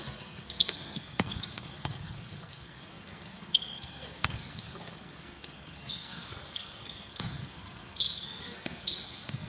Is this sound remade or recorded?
remade